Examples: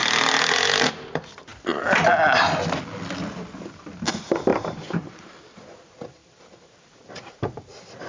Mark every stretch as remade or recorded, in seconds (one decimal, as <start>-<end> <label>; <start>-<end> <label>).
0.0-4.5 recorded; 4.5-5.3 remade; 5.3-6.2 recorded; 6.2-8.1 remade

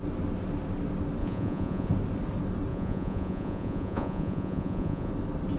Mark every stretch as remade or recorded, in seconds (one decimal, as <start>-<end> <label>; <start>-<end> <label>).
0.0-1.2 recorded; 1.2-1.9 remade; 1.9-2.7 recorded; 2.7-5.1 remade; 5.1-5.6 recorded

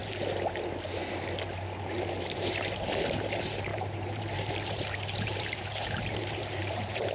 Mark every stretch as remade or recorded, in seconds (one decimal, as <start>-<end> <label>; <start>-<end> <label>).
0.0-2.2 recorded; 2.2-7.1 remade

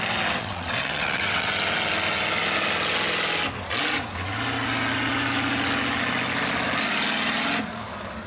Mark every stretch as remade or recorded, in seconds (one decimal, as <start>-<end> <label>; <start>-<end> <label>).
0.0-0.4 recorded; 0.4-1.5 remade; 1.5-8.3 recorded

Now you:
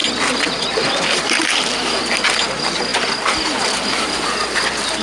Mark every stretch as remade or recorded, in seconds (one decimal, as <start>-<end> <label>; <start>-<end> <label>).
0.0-1.2 remade; 1.2-2.9 recorded; 2.9-3.9 remade; 3.9-5.0 recorded

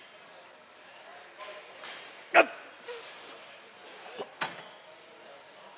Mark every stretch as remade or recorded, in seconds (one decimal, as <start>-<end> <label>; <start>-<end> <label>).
0.0-5.8 recorded

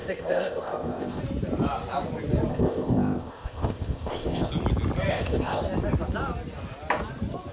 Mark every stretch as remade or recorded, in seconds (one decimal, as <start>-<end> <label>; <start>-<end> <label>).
0.0-1.2 remade; 1.2-2.5 recorded; 2.5-4.5 remade; 4.5-5.1 recorded; 5.1-5.6 remade; 5.6-7.5 recorded

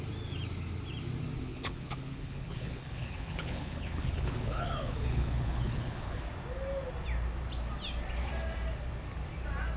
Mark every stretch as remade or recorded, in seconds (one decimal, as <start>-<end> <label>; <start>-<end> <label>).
0.0-1.5 recorded; 1.5-6.2 remade; 6.2-9.8 recorded